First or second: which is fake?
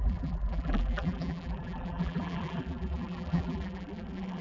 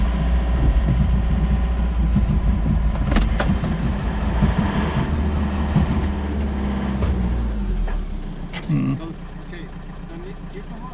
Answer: first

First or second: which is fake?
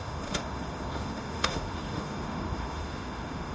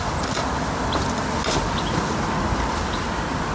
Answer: first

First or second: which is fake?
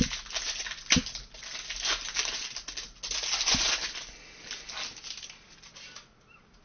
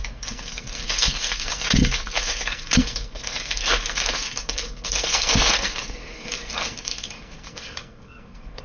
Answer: second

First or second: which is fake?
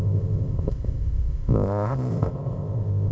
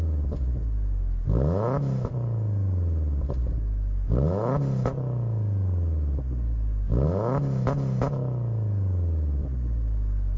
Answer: first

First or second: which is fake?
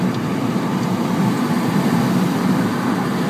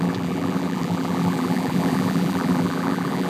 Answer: second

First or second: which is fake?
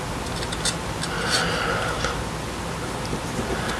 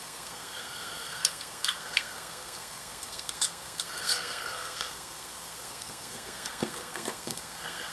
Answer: second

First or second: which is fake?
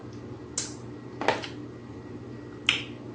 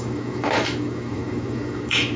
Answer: second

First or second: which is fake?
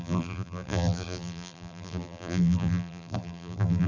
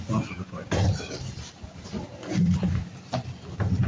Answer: first